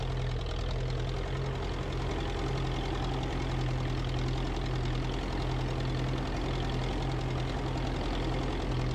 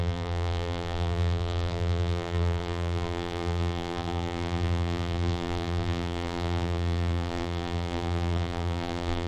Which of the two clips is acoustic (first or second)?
first